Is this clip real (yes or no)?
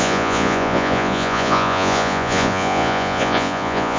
no